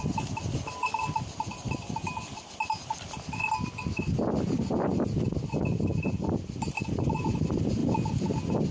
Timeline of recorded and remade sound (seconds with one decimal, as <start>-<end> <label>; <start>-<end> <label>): 0.0-8.7 recorded